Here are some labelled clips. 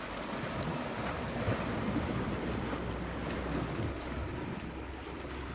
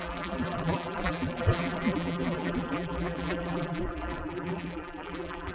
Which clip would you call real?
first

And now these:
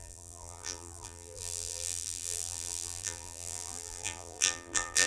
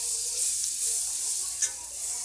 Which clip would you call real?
second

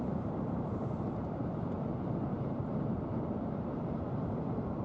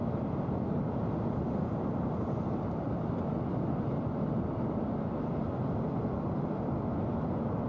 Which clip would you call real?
second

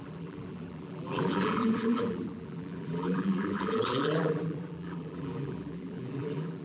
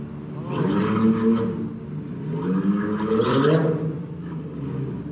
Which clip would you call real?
second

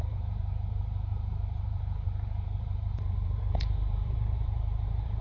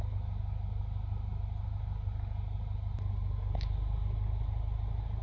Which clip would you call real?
second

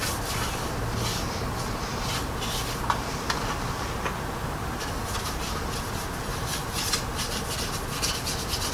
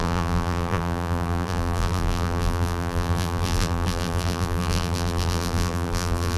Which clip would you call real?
first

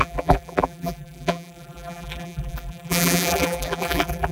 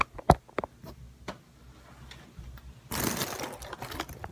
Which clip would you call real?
second